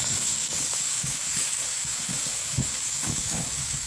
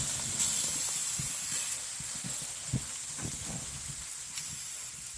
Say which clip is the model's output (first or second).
first